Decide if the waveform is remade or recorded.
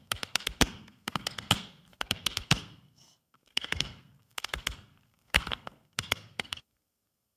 remade